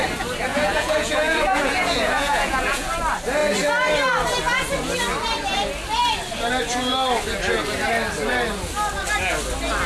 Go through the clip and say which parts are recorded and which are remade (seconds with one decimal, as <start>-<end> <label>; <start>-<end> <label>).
0.0-0.5 recorded; 0.5-2.9 remade; 2.9-9.9 recorded